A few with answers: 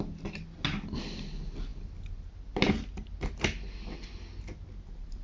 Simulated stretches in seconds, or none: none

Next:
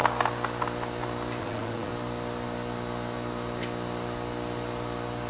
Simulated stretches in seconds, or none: 1.4-1.9

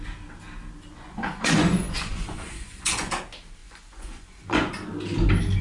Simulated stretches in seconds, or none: 0.9-3.1; 3.6-4.7

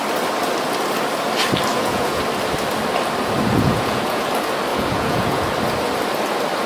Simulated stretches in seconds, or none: 1.7-2.2; 3.5-4.3; 4.7-5.5